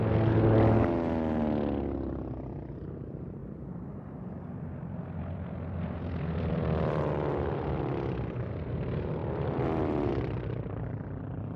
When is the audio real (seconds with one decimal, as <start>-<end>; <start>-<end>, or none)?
0.0-3.4; 7.8-9.2; 10.1-11.6